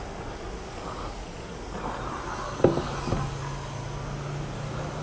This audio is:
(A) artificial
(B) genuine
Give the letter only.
B